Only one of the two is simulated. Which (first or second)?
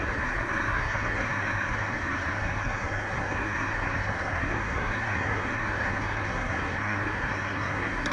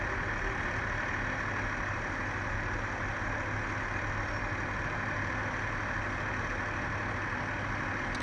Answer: first